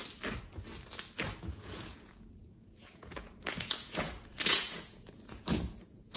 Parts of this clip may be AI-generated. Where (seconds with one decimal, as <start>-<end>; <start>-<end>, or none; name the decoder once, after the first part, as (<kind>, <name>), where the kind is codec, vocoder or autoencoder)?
1.5-6.2 (vocoder, Vocos)

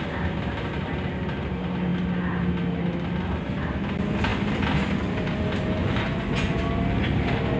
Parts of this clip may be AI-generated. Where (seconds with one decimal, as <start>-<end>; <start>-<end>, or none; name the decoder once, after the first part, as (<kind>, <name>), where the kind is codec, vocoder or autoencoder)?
5.8-6.6 (vocoder, Vocos)

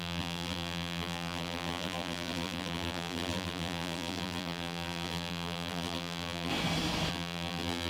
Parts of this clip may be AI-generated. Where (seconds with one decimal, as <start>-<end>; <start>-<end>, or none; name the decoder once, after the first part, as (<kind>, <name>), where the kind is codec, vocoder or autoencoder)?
0.0-6.5 (vocoder, BigVGAN v2); 7.1-7.9